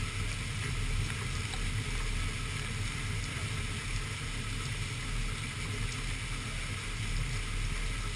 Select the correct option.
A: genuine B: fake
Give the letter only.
A